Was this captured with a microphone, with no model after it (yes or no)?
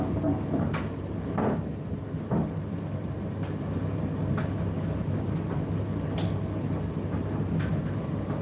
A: yes